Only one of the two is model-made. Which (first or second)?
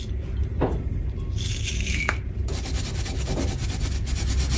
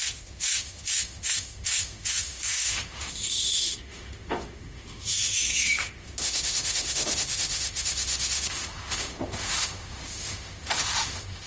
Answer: second